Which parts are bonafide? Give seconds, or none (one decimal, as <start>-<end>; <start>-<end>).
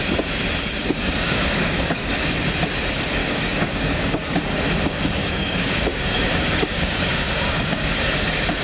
0.0-0.8; 2.1-3.2; 4.4-5.2; 8.0-8.6